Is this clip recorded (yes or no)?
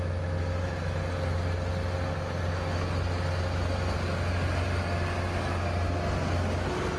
yes